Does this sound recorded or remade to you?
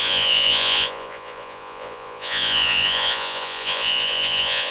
remade